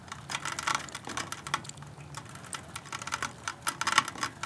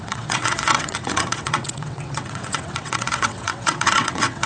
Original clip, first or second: first